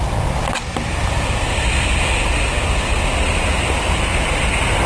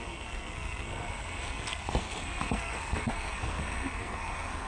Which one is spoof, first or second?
second